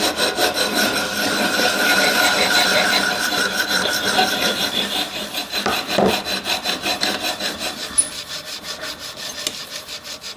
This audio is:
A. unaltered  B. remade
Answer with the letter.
A